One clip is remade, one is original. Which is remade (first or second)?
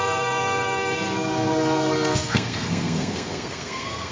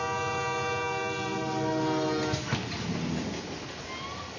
first